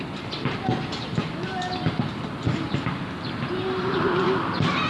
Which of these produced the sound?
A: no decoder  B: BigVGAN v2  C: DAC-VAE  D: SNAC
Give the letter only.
A